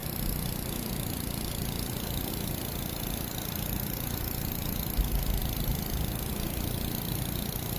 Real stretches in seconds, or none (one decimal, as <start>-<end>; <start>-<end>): 2.3-5.4; 6.3-7.8